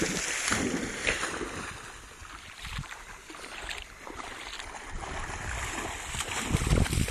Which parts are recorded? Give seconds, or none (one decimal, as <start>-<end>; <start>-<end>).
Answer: 0.0-7.1